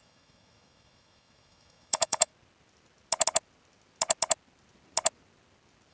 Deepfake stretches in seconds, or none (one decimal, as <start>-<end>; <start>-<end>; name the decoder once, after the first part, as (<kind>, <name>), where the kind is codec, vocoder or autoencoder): 0.0-2.3 (autoencoder, DAC-VAE)